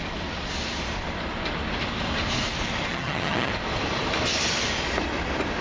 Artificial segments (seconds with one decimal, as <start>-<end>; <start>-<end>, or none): 2.9-3.5